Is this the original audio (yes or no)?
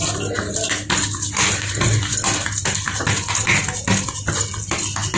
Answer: yes